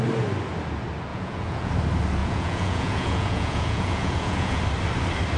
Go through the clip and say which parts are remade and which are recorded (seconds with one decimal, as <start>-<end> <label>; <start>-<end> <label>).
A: 0.0-1.1 recorded; 1.1-1.7 remade; 1.7-2.2 recorded; 2.2-4.6 remade; 4.6-5.4 recorded